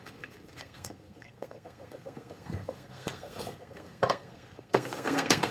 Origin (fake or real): fake